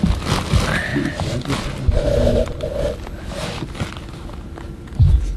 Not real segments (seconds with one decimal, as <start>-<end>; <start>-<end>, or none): none